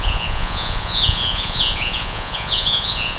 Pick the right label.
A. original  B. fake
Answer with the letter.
B